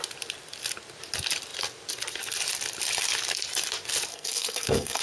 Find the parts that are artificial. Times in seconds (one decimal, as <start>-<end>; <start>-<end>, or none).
4.1-5.0